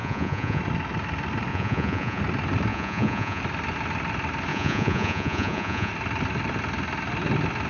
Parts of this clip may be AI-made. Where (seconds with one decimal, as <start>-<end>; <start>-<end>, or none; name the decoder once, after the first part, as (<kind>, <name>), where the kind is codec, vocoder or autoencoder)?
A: 0.0-0.6 (vocoder, Vocos); 1.5-2.2; 2.7-3.4; 4.5-5.9